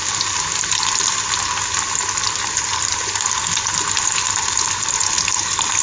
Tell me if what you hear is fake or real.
real